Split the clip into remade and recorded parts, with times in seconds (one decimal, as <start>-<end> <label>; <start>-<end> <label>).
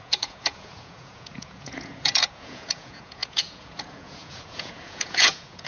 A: 0.0-5.7 remade